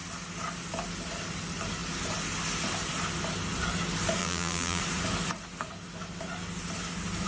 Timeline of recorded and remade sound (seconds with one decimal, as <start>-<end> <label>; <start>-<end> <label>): 0.0-4.2 recorded; 4.2-4.8 remade; 4.8-7.3 recorded